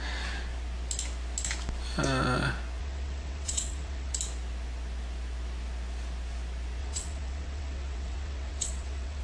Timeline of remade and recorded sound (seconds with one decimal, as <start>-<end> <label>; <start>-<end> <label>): 0.0-2.8 recorded; 2.8-4.1 remade; 4.1-6.8 recorded; 6.8-9.2 remade